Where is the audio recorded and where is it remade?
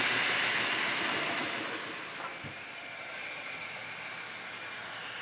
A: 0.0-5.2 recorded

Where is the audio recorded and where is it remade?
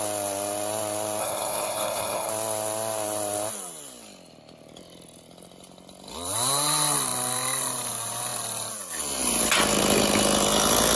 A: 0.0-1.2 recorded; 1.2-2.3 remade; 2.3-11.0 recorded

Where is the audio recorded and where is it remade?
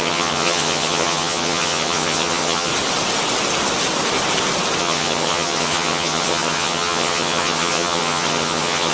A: 0.0-2.7 remade; 2.7-4.8 recorded; 4.8-8.9 remade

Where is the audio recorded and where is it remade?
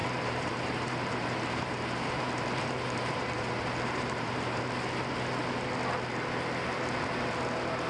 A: 0.0-4.6 remade; 4.6-7.9 recorded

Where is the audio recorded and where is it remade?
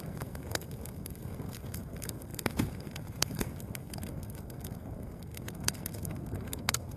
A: 0.0-7.0 remade